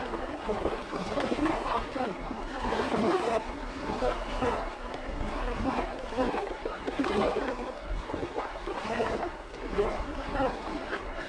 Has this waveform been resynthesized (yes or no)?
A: yes